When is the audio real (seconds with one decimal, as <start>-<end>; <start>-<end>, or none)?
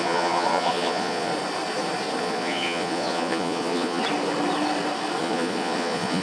1.3-2.2; 4.0-5.2